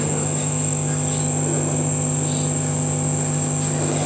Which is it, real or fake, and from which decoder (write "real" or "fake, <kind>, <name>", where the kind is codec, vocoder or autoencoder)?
real